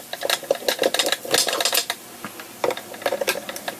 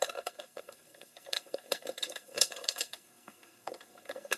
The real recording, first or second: first